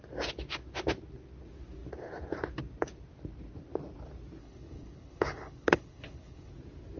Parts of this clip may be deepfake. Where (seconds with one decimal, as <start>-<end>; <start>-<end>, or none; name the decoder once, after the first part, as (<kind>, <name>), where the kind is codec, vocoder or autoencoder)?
4.4-6.5 (codec, HILCodec)